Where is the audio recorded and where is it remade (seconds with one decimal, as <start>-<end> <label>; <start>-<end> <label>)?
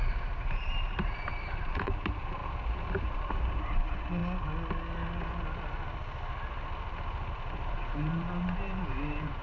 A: 0.0-2.4 remade; 2.4-3.2 recorded; 3.2-4.2 remade; 4.2-7.3 recorded; 7.3-9.4 remade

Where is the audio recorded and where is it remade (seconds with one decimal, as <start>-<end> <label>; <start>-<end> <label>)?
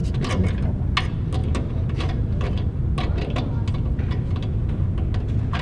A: 0.0-5.6 recorded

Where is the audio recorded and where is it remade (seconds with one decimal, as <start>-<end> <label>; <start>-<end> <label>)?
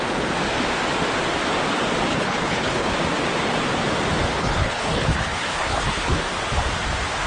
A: 0.0-2.1 recorded; 2.1-2.9 remade; 2.9-4.3 recorded; 4.3-6.2 remade; 6.2-7.3 recorded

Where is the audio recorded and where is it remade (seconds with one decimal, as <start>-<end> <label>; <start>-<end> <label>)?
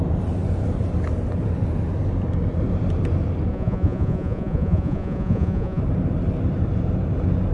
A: 0.0-3.5 recorded; 3.5-5.8 remade; 5.8-7.5 recorded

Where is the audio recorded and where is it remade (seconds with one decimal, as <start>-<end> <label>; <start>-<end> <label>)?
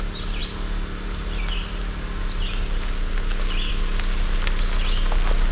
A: 0.0-5.5 recorded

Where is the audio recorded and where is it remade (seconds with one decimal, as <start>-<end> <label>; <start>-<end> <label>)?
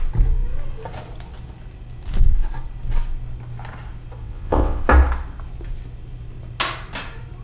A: 0.0-4.2 recorded; 4.2-4.8 remade; 4.8-7.4 recorded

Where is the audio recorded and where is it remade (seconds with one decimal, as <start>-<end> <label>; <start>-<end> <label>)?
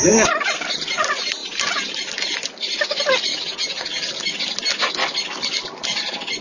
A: 0.0-3.3 recorded; 3.3-4.1 remade; 4.1-6.4 recorded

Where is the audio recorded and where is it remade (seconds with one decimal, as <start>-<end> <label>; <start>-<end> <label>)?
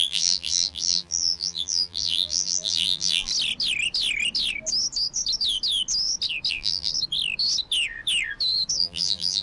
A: 0.0-3.3 remade; 3.3-6.5 recorded; 6.5-6.9 remade; 6.9-8.8 recorded; 8.8-9.4 remade